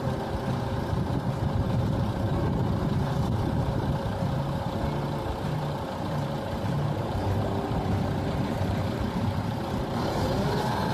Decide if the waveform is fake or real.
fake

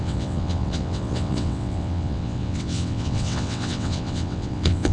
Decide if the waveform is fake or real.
fake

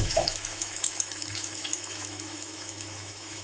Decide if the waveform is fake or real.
fake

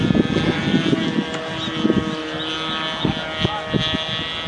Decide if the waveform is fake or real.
real